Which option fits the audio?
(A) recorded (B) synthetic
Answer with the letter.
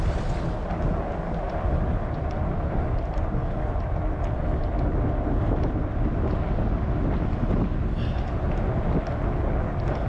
A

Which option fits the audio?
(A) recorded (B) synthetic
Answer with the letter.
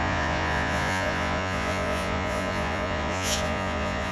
B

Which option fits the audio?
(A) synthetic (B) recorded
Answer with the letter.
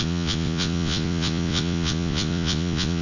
A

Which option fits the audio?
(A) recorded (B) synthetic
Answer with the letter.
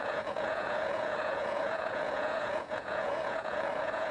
B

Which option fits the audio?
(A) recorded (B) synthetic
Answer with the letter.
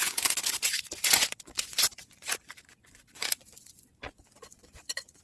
B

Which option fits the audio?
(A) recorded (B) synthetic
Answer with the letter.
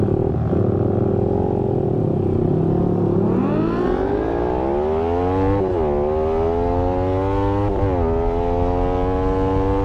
A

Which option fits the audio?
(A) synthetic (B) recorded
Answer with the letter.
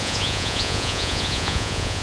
A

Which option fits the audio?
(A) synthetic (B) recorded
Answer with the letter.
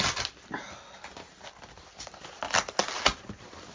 B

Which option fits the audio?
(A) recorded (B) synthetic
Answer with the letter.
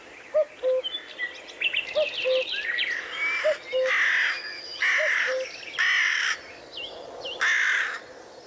A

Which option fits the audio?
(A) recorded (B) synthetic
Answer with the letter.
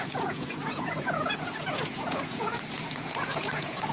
B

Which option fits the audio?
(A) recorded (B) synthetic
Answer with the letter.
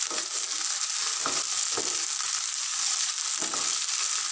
A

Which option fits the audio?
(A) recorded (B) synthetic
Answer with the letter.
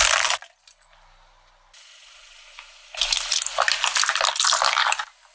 A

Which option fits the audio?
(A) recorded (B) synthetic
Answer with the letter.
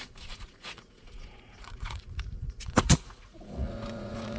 B